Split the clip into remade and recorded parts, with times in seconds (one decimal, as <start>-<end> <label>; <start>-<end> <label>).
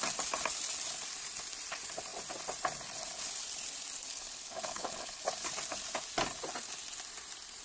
0.0-4.1 recorded; 4.1-5.2 remade; 5.2-7.6 recorded